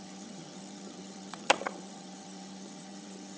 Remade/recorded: remade